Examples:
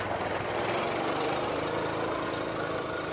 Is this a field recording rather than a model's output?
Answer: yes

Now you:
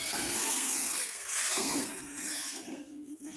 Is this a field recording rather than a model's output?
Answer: no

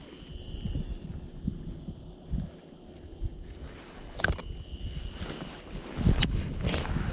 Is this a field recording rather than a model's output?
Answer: yes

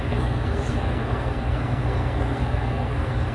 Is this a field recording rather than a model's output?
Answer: no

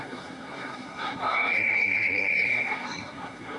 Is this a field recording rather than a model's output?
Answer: no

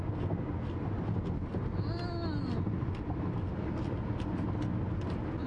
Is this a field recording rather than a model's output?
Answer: yes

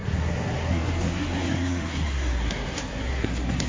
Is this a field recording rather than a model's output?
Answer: no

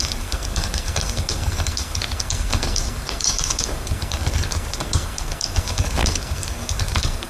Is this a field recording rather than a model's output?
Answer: no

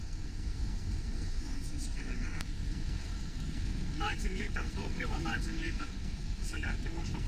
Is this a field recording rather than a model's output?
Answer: no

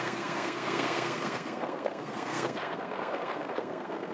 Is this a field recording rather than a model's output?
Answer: no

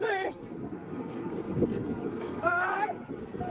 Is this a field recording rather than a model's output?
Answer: no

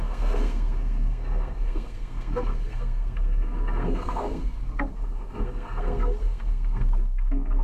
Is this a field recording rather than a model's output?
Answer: no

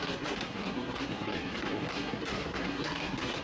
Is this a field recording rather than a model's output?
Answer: no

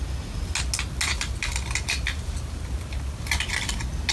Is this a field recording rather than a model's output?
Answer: yes